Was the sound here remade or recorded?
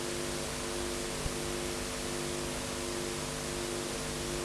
recorded